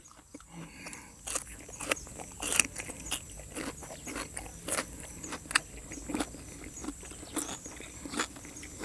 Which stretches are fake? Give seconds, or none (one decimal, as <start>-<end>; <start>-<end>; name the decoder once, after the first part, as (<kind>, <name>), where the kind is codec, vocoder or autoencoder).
4.5-5.2 (vocoder, BigVGAN v2)